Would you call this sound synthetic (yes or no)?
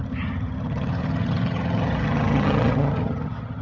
yes